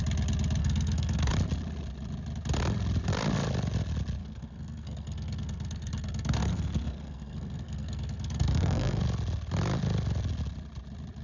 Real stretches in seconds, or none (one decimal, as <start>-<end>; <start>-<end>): 0.0-0.6; 1.3-4.2; 9.0-11.2